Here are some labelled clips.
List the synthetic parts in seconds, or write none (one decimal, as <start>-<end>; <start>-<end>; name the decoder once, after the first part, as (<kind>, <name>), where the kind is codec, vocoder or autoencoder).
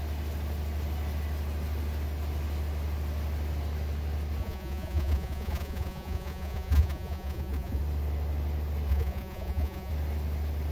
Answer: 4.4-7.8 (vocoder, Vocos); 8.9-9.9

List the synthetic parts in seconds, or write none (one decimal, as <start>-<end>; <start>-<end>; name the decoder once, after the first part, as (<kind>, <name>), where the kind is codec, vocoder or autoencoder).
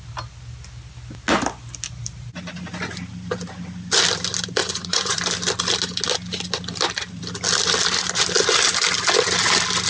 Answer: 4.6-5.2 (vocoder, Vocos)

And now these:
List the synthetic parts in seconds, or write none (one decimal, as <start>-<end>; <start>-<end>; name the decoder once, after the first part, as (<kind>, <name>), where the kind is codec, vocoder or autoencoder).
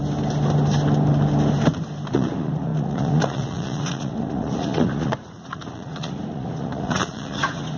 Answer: 2.1-7.8 (vocoder, Vocos)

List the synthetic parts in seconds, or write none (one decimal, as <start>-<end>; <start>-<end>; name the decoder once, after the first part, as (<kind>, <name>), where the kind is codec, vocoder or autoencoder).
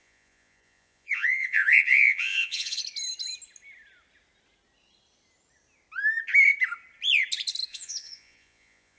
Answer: 0.0-2.8 (vocoder, Vocos); 7.7-9.0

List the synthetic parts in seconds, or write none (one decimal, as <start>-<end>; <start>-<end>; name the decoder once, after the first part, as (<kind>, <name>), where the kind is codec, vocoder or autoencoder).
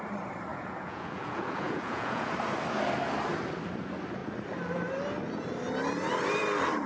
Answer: 0.5-2.3 (vocoder, Vocos)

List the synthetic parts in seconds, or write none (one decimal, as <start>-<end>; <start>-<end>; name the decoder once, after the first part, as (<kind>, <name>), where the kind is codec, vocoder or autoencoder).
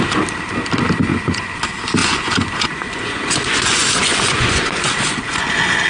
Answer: 1.1-1.6 (vocoder, Vocos); 2.0-5.5